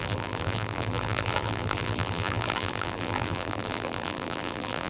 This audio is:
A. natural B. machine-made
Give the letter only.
B